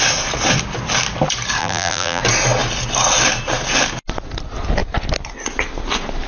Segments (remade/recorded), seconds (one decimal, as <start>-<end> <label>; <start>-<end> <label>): 0.0-1.6 recorded; 1.6-2.2 remade; 2.2-6.3 recorded